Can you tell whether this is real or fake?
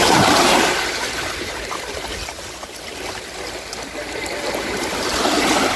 real